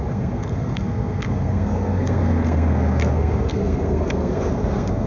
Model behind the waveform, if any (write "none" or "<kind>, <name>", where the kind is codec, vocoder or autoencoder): codec, SNAC